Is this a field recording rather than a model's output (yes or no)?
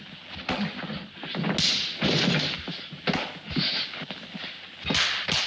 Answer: yes